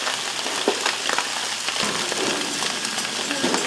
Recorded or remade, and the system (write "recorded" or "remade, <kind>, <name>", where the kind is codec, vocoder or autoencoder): recorded